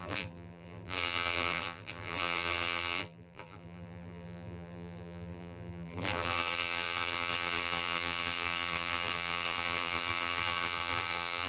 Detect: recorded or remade remade